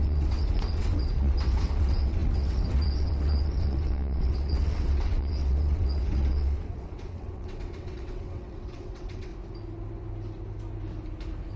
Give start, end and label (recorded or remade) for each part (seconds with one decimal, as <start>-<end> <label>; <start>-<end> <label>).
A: 0.0-9.3 remade; 9.3-11.6 recorded